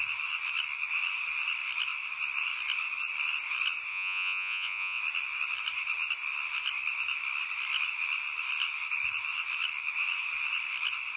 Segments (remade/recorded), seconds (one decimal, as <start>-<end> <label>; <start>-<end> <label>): 0.0-3.9 recorded; 3.9-5.0 remade; 5.0-11.2 recorded